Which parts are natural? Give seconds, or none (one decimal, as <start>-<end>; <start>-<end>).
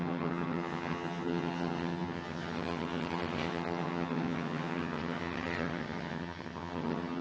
none